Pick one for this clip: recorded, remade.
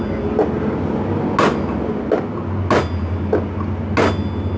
recorded